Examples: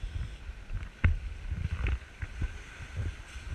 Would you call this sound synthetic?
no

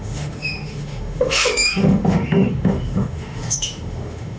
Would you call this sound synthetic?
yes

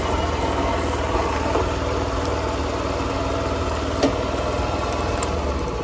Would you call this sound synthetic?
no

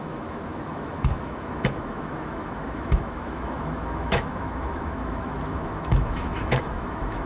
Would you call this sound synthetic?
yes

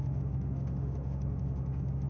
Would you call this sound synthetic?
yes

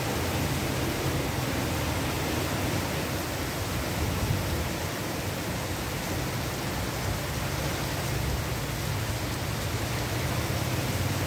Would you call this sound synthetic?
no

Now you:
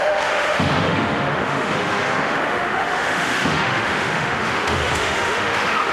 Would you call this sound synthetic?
yes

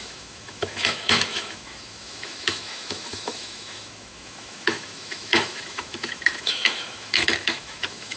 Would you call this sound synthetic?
yes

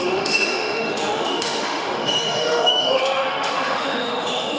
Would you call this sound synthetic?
yes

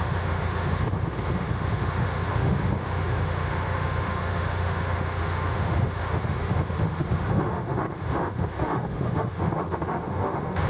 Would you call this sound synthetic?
yes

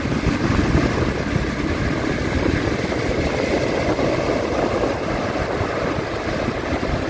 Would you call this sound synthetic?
no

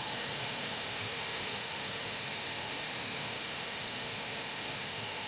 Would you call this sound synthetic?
yes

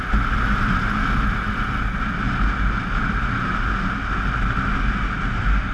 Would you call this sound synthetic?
no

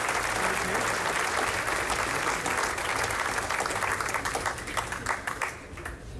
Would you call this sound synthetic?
no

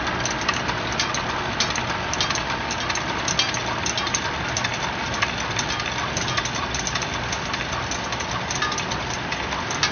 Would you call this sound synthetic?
no